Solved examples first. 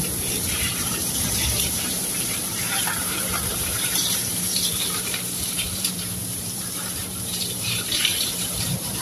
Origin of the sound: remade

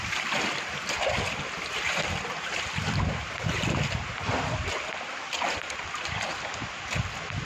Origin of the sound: remade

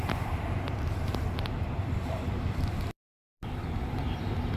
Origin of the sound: remade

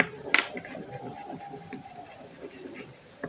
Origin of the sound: recorded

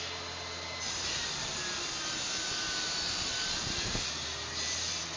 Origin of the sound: remade